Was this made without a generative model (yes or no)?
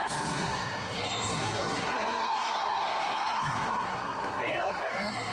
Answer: no